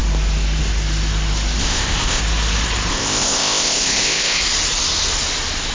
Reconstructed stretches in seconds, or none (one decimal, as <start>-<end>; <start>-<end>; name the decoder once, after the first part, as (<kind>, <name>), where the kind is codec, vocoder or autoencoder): 1.6-2.2 (codec, ZipCodec); 2.9-4.4